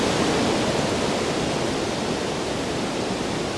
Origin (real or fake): real